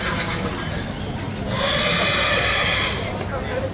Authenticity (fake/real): real